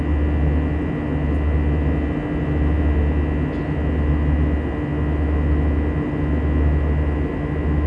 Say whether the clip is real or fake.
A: real